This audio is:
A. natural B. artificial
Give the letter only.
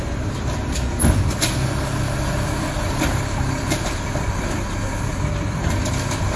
B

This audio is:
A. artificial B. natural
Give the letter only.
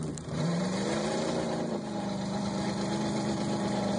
A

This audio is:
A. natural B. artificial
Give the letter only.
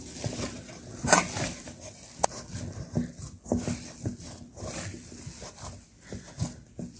A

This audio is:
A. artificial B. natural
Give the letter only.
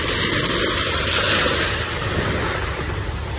B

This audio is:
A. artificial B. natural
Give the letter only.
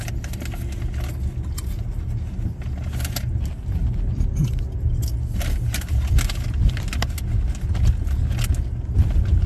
B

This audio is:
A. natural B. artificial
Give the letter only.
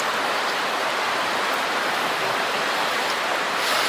A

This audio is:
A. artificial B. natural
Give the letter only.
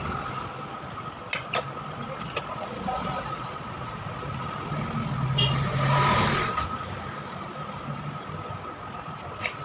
B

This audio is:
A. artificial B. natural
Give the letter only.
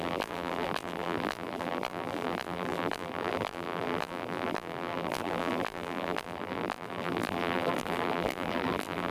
A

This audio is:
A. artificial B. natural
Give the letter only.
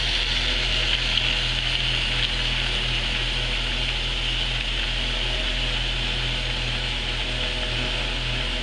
B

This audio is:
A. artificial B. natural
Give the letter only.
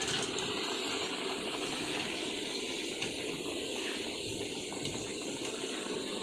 B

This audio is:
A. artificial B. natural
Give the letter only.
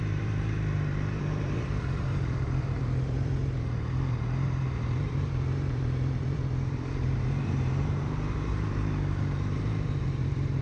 A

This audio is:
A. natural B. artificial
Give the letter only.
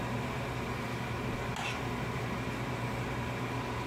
A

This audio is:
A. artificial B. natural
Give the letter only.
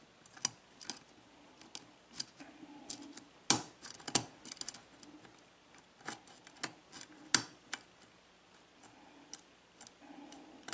B